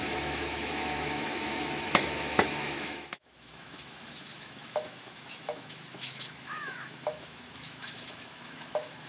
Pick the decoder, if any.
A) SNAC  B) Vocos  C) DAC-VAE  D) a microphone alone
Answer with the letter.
C